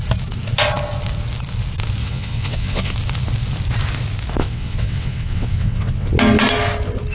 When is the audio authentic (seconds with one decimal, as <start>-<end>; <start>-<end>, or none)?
0.0-2.0; 2.9-4.4; 6.1-7.1